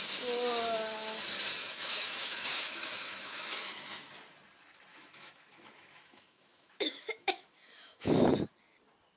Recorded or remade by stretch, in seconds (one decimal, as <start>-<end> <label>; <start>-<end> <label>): 0.0-1.6 recorded; 1.6-4.1 remade; 4.1-4.9 recorded; 4.9-8.3 remade; 8.3-9.2 recorded